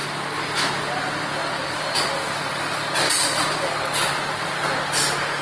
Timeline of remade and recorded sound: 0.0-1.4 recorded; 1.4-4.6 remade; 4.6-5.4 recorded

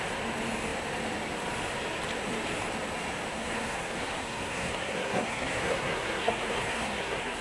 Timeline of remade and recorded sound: 0.0-3.3 recorded; 3.3-7.4 remade

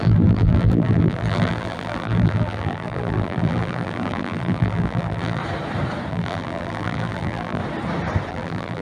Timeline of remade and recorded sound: 0.0-5.4 remade; 5.4-6.1 recorded; 6.1-7.6 remade; 7.6-8.3 recorded; 8.3-8.8 remade